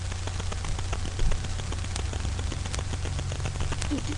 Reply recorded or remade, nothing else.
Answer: recorded